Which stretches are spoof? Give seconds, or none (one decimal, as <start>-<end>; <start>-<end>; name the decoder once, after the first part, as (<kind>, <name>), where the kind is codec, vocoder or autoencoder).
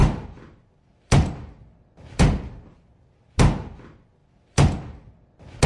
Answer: 0.0-2.2 (vocoder, BigVGAN v2); 4.2-5.1